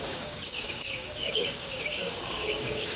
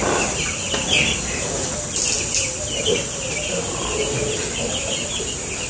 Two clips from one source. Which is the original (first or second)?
second